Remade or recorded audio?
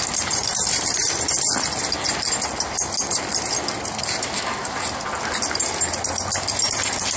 recorded